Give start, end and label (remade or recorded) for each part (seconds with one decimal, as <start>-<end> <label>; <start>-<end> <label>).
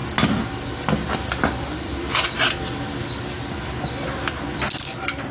0.0-5.3 recorded